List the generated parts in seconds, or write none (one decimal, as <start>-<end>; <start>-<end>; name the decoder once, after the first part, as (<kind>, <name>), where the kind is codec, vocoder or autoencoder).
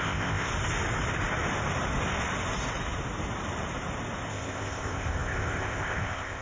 0.0-0.5 (codec, ZipCodec); 4.3-6.4